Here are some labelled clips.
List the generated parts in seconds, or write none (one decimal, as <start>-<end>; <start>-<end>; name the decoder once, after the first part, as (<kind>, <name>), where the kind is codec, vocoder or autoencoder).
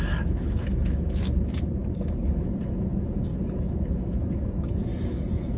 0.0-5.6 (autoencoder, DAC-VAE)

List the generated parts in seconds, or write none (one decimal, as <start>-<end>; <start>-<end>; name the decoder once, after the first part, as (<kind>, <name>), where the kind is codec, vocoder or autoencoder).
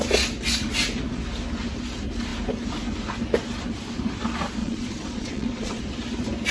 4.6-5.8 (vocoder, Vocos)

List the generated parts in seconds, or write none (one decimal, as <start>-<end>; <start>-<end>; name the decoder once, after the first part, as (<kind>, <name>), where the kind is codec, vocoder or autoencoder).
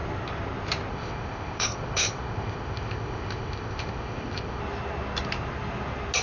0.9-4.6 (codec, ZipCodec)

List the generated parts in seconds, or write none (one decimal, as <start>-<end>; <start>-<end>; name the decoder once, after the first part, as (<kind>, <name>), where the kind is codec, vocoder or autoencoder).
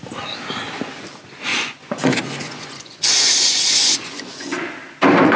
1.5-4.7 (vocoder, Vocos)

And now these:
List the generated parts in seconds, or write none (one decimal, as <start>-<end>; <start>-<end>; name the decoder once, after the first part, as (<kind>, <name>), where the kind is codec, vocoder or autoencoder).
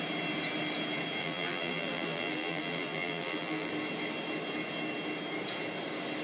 1.2-3.7 (vocoder, BigVGAN v2)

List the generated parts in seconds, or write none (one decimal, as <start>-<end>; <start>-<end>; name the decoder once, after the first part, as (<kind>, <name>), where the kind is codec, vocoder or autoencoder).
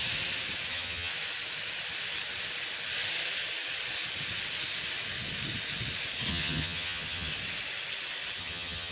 0.7-1.1 (vocoder, HiFi-GAN); 6.3-7.3; 8.4-8.9